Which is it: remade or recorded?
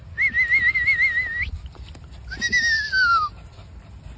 recorded